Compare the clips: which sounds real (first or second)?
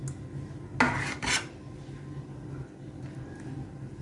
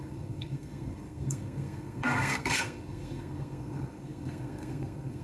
first